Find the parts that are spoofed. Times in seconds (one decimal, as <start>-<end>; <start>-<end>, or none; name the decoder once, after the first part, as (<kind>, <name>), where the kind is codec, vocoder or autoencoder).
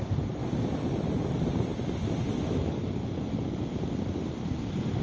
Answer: none